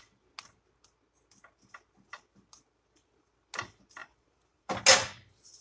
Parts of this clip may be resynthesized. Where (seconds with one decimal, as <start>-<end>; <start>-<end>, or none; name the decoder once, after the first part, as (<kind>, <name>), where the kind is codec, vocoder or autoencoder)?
4.0-4.8 (vocoder, BigVGAN v2)